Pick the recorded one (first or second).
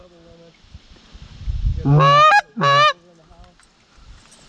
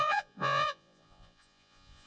first